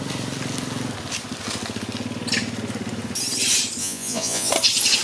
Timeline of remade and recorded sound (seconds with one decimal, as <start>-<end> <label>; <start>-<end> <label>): 0.0-3.8 recorded; 3.8-4.5 remade; 4.5-5.0 recorded

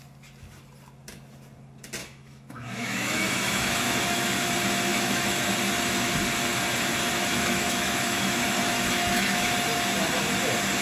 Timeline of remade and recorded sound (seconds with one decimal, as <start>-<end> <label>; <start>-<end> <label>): 0.0-2.0 recorded; 2.0-4.5 remade; 4.5-4.9 recorded; 4.9-5.5 remade; 5.5-7.3 recorded; 7.3-9.5 remade; 9.5-10.8 recorded

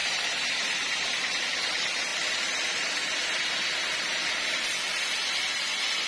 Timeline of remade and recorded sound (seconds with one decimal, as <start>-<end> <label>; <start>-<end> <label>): 0.0-1.4 remade; 1.4-6.1 recorded

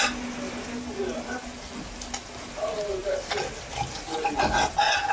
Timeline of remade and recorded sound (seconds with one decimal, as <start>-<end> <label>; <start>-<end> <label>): 0.0-5.1 recorded

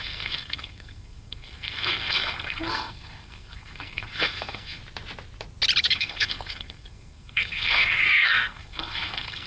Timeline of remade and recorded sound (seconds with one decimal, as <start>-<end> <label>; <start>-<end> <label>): 0.0-4.8 remade; 4.8-5.8 recorded; 5.8-9.5 remade

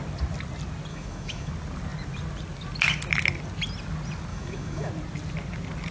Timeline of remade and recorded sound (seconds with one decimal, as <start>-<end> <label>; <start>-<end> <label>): 0.0-0.9 recorded; 0.9-1.5 remade; 1.5-4.3 recorded; 4.3-4.9 remade; 4.9-5.9 recorded